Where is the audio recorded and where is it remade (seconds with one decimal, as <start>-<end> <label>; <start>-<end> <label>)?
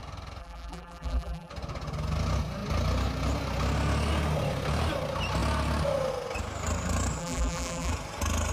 0.0-0.4 recorded; 0.4-1.5 remade; 1.5-7.2 recorded; 7.2-7.9 remade; 7.9-8.5 recorded